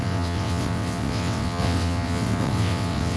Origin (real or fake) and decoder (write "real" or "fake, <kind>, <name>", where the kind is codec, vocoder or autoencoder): fake, vocoder, WaveNeXt